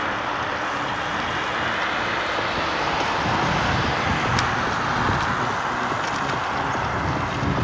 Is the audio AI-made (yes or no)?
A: no